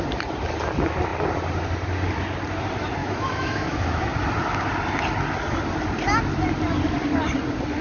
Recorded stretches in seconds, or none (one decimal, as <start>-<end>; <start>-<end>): 0.0-3.0; 4.1-7.8